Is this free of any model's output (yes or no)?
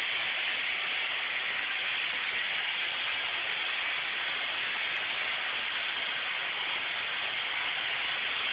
yes